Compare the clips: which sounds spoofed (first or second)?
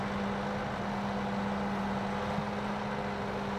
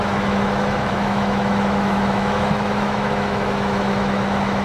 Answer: second